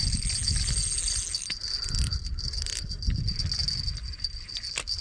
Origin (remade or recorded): recorded